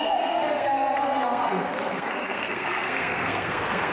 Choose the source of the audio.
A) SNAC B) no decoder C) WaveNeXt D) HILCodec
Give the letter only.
A